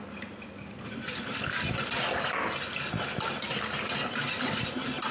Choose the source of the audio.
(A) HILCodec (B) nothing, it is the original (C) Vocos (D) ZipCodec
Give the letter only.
B